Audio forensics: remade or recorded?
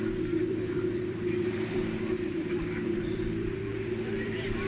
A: remade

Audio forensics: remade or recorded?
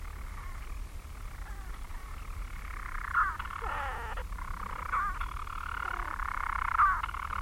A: recorded